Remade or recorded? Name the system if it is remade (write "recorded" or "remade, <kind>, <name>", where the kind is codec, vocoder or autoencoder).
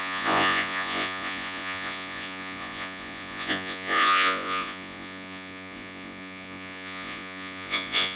remade, vocoder, Vocos